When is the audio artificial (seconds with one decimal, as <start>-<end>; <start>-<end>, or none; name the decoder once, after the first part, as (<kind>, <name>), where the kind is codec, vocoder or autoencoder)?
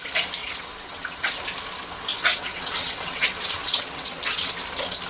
0.4-1.3 (vocoder, WaveNeXt); 2.1-4.5